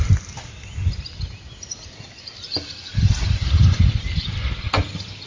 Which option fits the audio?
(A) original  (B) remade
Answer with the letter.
B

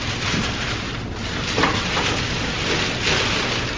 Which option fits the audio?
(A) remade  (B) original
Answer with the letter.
B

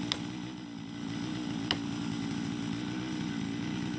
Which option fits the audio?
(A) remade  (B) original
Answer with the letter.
B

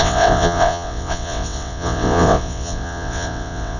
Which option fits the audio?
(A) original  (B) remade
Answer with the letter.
B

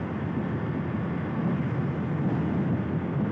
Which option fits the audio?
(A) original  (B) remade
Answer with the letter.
A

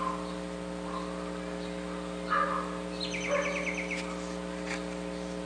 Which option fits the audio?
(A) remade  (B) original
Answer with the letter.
B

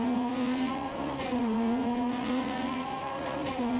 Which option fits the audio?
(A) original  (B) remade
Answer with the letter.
B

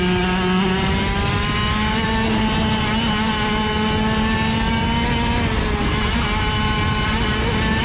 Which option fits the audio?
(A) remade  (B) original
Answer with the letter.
B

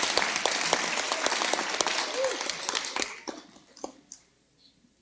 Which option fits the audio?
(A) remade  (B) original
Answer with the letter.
B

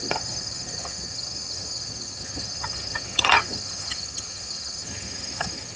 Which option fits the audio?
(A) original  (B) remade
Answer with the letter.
B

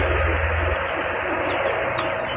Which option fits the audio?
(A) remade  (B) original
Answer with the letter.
B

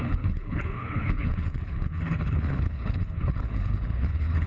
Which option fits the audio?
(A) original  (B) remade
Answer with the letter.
B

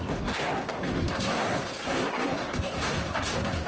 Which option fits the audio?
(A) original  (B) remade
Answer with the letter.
B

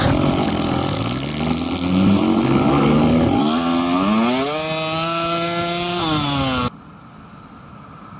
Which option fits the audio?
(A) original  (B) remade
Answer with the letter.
A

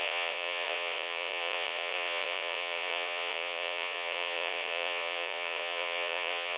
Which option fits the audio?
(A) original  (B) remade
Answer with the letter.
B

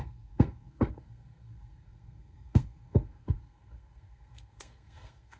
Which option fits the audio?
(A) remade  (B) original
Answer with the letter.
A